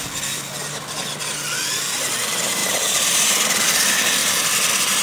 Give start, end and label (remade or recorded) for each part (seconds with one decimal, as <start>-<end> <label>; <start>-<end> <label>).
0.0-4.2 recorded; 4.2-5.0 remade